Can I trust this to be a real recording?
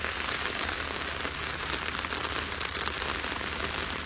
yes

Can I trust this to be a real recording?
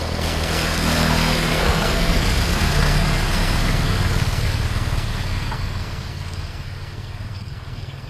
no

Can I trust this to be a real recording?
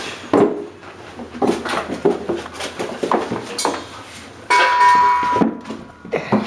yes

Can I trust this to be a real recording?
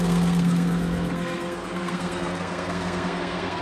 no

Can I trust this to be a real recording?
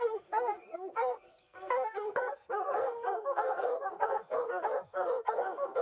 no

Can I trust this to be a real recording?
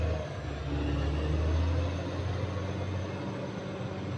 yes